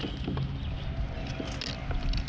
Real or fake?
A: real